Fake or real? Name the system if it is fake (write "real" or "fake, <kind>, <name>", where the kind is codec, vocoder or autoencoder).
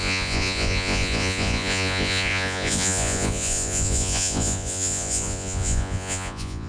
fake, vocoder, Vocos